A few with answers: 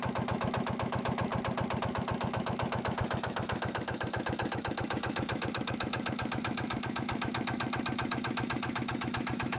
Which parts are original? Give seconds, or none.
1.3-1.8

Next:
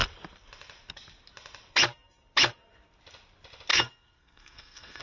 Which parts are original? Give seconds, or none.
0.0-3.7

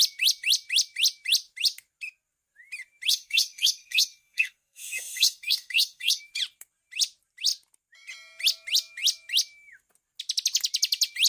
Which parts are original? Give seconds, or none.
0.0-3.1; 6.2-11.3

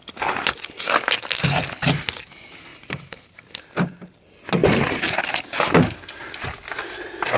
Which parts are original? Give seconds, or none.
0.0-2.7; 3.4-4.6; 6.2-7.4

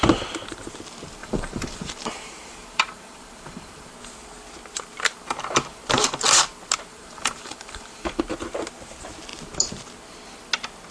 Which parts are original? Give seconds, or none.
0.0-1.2; 3.9-6.9; 8.2-10.9

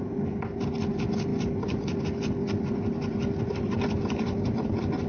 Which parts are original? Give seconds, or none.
0.0-5.1

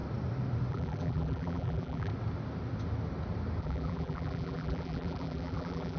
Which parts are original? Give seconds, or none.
0.0-0.7; 2.1-3.6

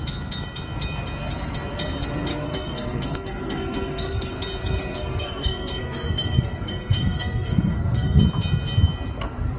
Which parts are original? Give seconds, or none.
0.0-2.3; 4.3-4.9; 8.2-9.6